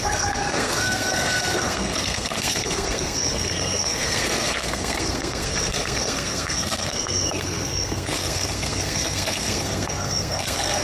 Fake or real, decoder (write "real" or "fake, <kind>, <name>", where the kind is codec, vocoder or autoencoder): fake, codec, SNAC